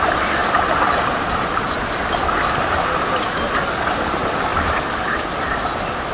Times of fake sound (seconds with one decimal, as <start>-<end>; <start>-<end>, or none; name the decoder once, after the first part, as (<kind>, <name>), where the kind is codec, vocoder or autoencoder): 4.5-5.2 (vocoder, BigVGAN v2)